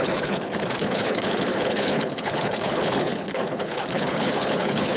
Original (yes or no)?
no